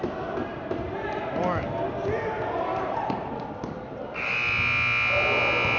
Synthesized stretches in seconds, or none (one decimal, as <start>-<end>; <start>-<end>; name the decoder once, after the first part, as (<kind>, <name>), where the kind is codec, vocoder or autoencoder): 0.5-1.9 (vocoder, BigVGAN v2); 2.7-3.3

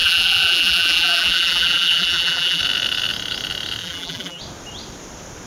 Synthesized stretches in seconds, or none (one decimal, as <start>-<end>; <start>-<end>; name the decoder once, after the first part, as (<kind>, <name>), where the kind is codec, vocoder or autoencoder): 0.0-2.6 (vocoder, BigVGAN v2); 3.8-4.4